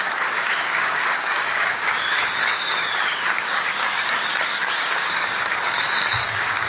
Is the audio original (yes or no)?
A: no